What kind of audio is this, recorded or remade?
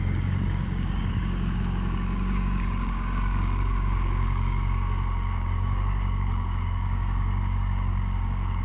remade